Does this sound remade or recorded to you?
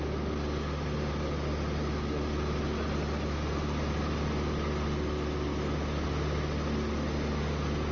recorded